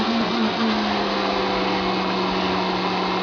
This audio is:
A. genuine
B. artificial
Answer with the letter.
A